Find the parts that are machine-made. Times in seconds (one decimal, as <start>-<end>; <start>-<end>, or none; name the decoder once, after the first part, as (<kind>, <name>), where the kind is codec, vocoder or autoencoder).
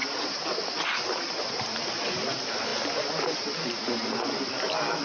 none